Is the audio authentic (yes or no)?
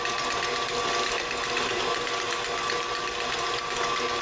yes